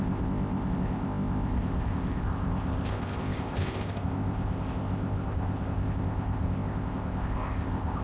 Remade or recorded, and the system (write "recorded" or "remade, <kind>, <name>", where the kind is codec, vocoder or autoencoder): remade, codec, ZipCodec